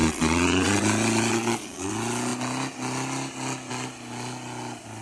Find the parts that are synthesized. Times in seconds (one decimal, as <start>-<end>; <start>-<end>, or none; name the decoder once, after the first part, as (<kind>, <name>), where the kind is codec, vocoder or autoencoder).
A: 0.0-0.8 (vocoder, Vocos); 1.3-1.9